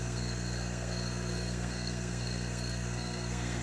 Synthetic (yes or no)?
yes